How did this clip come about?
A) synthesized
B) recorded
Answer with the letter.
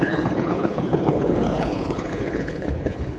A